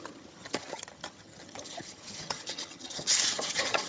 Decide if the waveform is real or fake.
fake